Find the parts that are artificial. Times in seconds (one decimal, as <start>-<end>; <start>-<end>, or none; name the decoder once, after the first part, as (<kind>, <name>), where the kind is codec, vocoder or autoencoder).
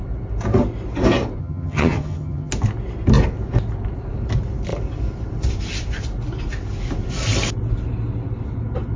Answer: 1.4-2.5 (vocoder, HiFi-GAN)